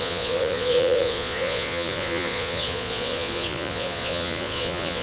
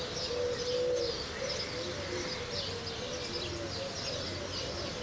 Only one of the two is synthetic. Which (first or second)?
first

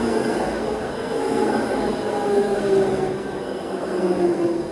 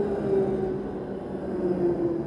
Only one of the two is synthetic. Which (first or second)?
first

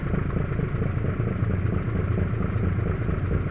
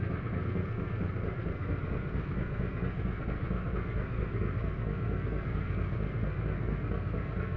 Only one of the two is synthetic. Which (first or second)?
second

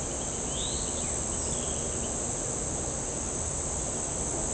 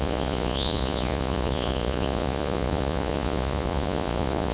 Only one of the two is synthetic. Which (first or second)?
second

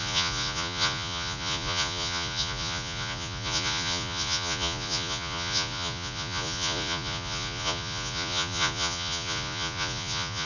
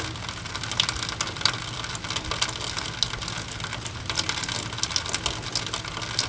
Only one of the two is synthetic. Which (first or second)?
first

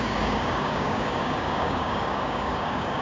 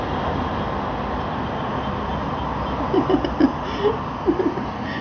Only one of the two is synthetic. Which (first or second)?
first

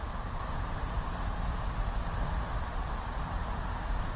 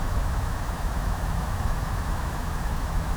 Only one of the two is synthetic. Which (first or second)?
second